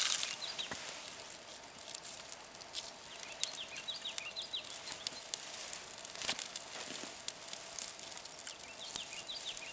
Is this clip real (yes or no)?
yes